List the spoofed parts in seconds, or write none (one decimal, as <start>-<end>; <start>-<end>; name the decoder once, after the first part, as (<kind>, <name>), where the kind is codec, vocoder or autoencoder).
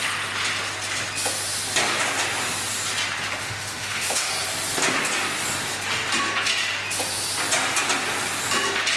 3.4-4.3 (autoencoder, DAC-VAE)